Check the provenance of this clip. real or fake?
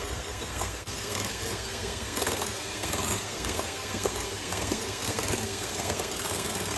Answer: fake